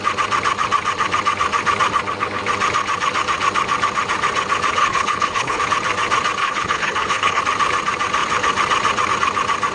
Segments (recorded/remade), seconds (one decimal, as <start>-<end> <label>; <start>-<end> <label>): 0.0-4.8 recorded; 4.8-5.6 remade; 5.6-6.4 recorded; 6.4-7.4 remade; 7.4-9.7 recorded